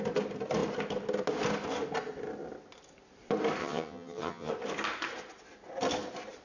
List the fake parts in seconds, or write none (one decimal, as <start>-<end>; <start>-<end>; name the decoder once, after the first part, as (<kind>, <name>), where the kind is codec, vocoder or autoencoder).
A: 3.6-4.5 (vocoder, HiFi-GAN)